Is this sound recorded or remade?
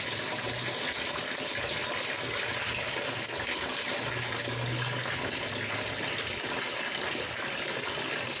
recorded